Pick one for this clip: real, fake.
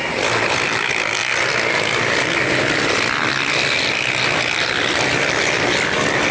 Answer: real